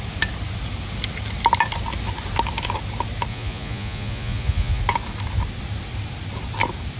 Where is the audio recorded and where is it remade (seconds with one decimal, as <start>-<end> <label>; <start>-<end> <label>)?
0.0-3.3 recorded; 3.3-4.8 remade; 4.8-7.0 recorded